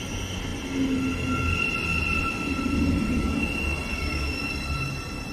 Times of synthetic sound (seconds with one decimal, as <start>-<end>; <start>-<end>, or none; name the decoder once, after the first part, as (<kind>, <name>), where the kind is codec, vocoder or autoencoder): 3.9-4.5 (codec, DAC)